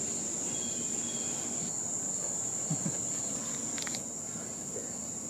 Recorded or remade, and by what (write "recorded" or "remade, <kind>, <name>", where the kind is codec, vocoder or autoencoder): recorded